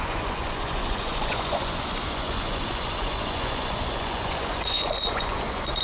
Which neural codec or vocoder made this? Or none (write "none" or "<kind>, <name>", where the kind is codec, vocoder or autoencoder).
vocoder, Vocos